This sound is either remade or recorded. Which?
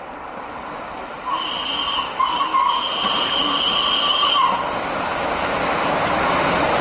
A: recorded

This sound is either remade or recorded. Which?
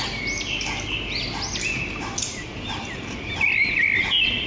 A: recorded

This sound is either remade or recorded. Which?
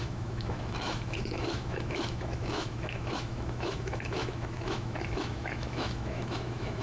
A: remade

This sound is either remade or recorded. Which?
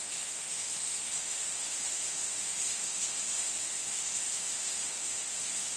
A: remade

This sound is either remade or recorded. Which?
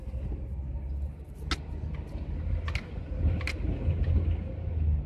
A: recorded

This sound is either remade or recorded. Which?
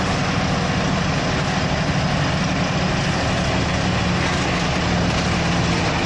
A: recorded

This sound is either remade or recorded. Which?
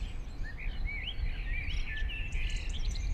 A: recorded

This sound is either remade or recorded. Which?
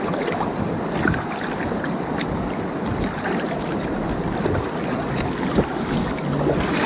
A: recorded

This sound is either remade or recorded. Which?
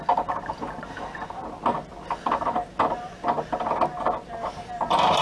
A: recorded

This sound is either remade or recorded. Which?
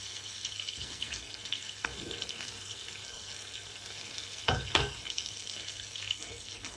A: remade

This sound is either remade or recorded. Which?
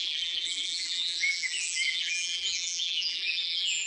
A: remade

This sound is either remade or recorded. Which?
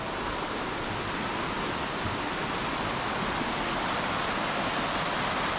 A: recorded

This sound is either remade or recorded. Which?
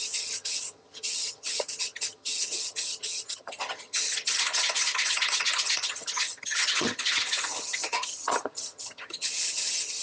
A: remade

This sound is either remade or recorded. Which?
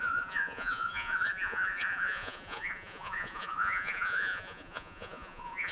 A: remade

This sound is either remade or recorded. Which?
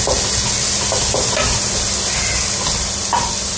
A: recorded